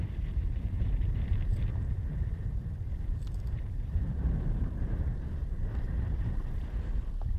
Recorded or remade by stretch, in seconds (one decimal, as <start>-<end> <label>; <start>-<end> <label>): 0.0-7.4 remade